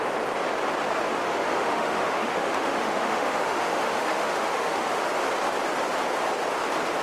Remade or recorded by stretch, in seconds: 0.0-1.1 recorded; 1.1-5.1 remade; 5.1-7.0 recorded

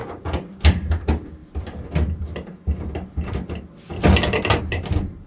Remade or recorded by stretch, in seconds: 0.0-5.3 recorded

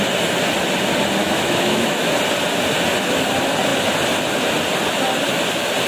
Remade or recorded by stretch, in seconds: 0.0-1.2 recorded; 1.2-2.1 remade; 2.1-5.9 recorded

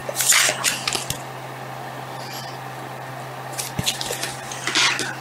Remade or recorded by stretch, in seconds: 0.0-5.2 recorded

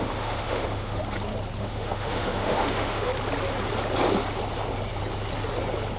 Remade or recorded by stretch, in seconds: 0.0-1.0 remade; 1.0-1.6 recorded; 1.6-3.1 remade; 3.1-6.0 recorded

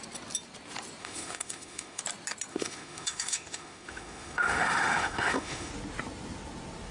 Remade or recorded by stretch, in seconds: 0.0-1.0 recorded; 1.0-2.0 remade; 2.0-2.5 recorded; 2.5-5.7 remade; 5.7-6.9 recorded

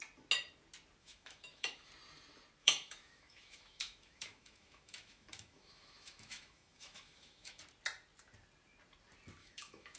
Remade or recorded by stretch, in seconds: 0.0-1.0 recorded; 1.0-1.9 remade; 1.9-2.6 recorded; 2.6-7.6 remade; 7.6-9.4 recorded; 9.4-10.0 remade